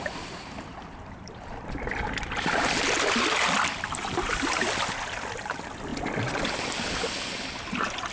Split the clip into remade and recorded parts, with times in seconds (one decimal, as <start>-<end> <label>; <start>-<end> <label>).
0.0-8.1 recorded